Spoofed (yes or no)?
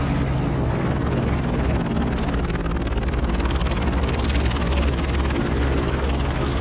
no